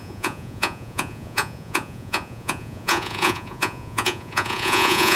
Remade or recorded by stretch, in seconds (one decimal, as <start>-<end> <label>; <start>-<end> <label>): 0.0-5.2 remade